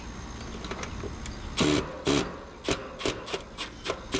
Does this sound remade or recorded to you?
recorded